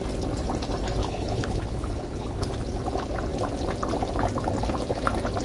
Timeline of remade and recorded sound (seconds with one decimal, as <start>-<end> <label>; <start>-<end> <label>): 0.0-1.0 recorded; 1.0-2.5 remade; 2.5-5.4 recorded